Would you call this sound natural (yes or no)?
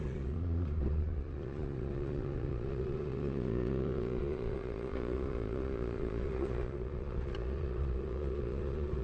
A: no